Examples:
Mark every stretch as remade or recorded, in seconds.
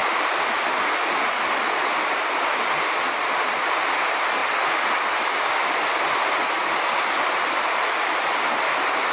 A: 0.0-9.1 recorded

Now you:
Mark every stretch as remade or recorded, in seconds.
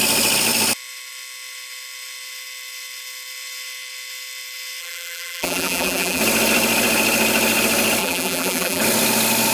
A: 0.0-4.8 recorded; 4.8-6.2 remade; 6.2-8.0 recorded; 8.0-8.8 remade; 8.8-9.5 recorded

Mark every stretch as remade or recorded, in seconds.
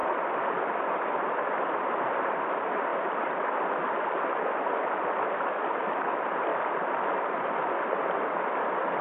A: 0.0-2.9 recorded; 2.9-5.2 remade; 5.2-6.5 recorded; 6.5-7.5 remade; 7.5-9.0 recorded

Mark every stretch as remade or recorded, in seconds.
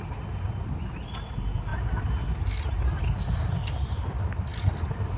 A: 0.0-5.2 recorded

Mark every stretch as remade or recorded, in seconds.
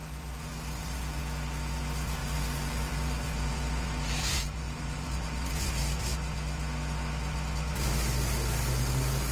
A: 0.0-1.2 remade; 1.2-2.2 recorded; 2.2-5.5 remade; 5.5-9.3 recorded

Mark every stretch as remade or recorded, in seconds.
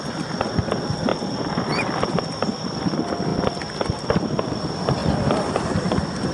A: 0.0-1.1 recorded; 1.1-2.4 remade; 2.4-5.0 recorded; 5.0-5.5 remade; 5.5-6.3 recorded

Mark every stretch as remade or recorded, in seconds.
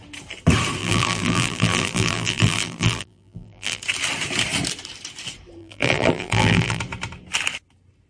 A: 0.0-0.8 recorded; 0.8-3.8 remade; 3.8-5.6 recorded; 5.6-6.8 remade; 6.8-8.1 recorded